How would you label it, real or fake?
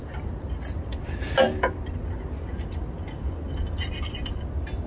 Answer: real